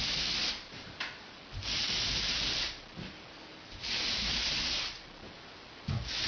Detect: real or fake real